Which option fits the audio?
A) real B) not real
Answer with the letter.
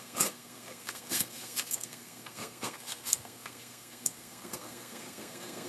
B